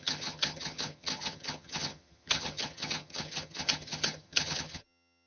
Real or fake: fake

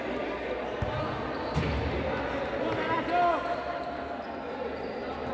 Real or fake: real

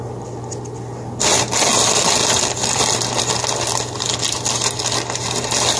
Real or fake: real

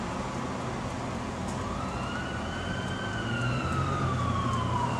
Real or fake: real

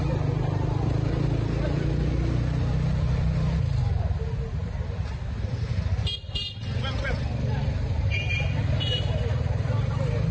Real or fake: real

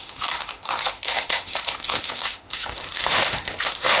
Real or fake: fake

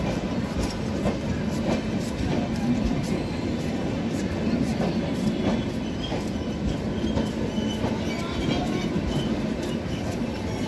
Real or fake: real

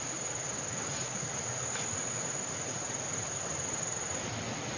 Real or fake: real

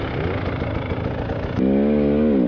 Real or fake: real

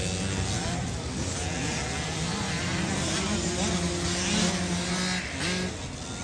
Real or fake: real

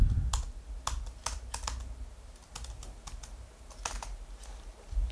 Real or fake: real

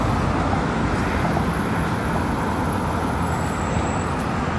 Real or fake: real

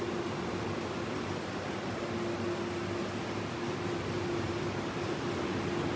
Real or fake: real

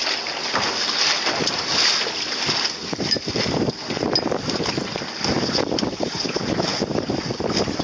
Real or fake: real